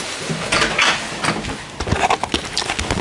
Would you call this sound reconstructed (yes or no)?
no